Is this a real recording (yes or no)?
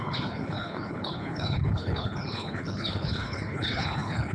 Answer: no